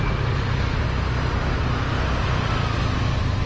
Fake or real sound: real